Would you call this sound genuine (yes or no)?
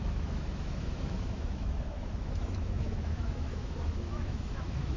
no